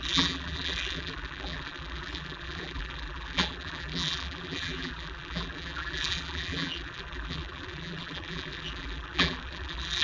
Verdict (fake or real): fake